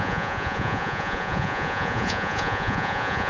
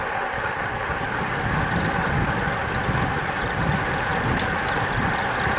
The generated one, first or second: first